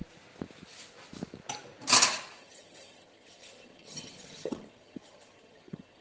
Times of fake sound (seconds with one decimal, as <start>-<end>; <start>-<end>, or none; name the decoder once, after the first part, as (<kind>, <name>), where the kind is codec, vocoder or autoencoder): 2.4-6.0 (vocoder, HiFi-GAN)